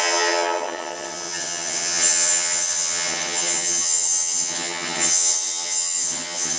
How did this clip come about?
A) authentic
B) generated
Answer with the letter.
B